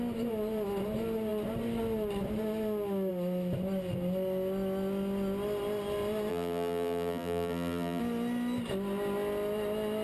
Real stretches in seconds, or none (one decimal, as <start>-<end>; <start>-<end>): 0.0-6.3; 8.0-10.0